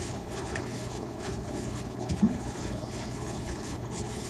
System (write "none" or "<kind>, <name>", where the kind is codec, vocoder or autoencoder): codec, HILCodec